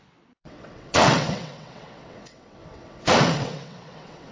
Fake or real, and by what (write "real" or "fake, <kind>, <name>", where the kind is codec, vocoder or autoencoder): fake, vocoder, WaveNeXt